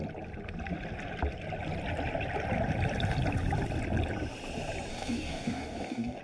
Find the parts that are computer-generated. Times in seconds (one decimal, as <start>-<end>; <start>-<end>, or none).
4.9-6.2